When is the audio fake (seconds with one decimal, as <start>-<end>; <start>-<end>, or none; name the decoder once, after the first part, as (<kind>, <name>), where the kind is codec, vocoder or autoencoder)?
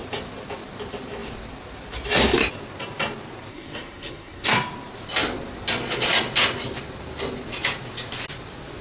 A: 3.5-4.5 (codec, SNAC)